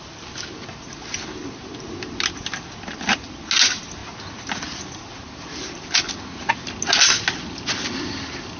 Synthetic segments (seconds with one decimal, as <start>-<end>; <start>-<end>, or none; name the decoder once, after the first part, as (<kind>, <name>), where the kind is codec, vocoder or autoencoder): none